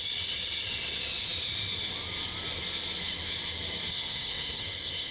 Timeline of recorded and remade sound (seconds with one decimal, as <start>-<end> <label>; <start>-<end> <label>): 0.0-3.9 recorded; 3.9-5.1 remade